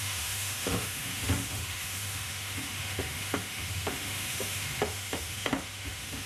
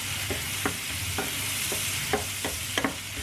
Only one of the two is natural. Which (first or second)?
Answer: second